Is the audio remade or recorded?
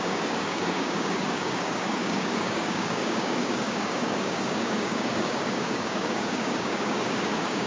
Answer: remade